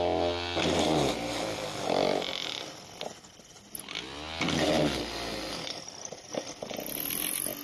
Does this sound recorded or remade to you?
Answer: recorded